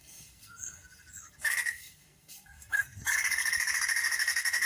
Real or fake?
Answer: fake